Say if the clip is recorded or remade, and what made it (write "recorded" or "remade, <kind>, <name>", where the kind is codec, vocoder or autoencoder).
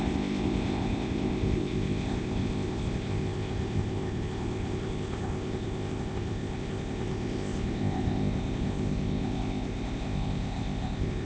remade, codec, ZipCodec